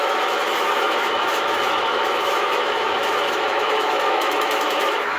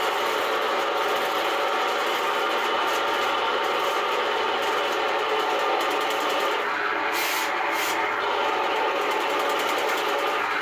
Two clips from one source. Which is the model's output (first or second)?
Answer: first